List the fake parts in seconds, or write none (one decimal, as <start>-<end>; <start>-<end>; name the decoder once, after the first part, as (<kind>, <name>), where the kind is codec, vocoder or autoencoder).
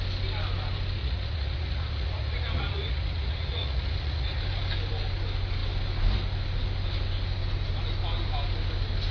1.0-4.4 (vocoder, Vocos)